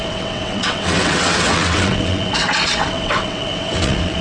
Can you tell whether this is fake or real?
fake